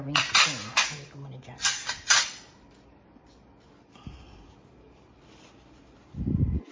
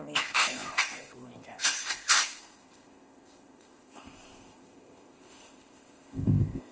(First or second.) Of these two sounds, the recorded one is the first